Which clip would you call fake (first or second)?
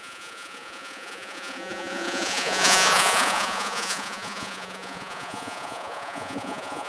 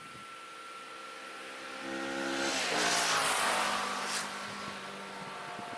first